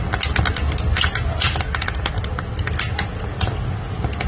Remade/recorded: recorded